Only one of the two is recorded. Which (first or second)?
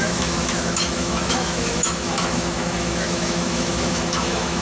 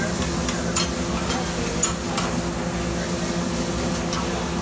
second